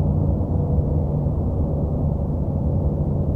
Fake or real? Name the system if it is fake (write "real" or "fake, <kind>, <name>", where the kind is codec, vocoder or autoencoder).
real